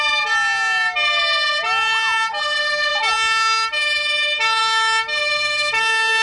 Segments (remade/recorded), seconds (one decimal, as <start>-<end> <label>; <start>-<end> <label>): 0.0-6.2 recorded

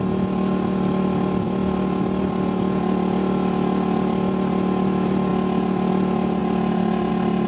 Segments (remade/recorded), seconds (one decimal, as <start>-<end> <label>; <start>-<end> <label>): 0.0-7.5 recorded

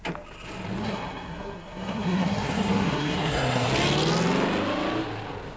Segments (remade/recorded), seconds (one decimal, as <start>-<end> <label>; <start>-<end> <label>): 0.0-0.8 recorded; 0.8-3.7 remade; 3.7-5.6 recorded

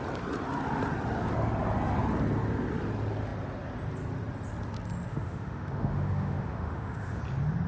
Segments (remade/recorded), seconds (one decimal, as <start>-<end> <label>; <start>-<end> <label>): 0.0-5.1 recorded; 5.1-7.2 remade; 7.2-7.7 recorded

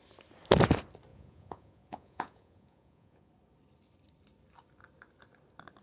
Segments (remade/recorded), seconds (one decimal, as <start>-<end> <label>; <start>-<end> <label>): 0.0-1.1 recorded; 1.1-3.3 remade; 3.3-5.8 recorded

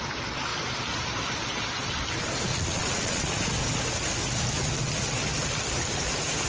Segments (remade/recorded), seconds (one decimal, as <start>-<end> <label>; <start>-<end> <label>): 0.0-2.5 recorded; 2.5-3.4 remade; 3.4-6.5 recorded

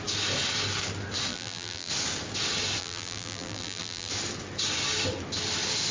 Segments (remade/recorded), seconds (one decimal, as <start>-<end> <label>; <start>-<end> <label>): 0.0-1.3 recorded; 1.3-1.9 remade; 1.9-2.8 recorded; 2.8-4.1 remade; 4.1-5.9 recorded

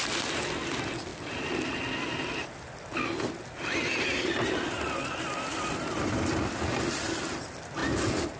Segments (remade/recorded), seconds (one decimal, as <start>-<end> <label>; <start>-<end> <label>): 0.0-8.4 recorded